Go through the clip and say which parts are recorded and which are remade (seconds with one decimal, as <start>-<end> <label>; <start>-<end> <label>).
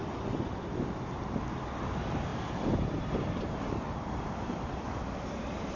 0.0-5.8 recorded